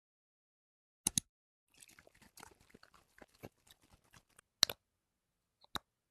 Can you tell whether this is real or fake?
real